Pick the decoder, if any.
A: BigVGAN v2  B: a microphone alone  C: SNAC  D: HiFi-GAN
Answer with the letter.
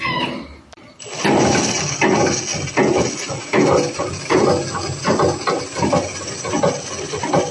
B